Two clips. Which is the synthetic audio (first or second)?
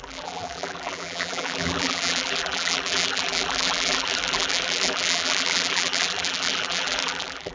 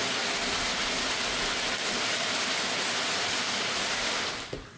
first